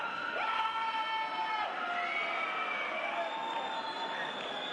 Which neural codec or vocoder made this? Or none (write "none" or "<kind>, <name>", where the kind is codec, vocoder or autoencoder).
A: none